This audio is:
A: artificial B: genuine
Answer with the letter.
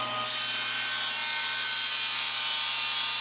B